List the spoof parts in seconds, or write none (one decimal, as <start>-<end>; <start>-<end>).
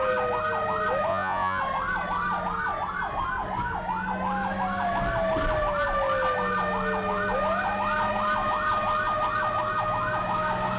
1.1-1.6